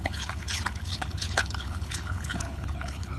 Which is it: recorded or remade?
remade